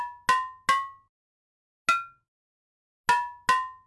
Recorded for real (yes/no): yes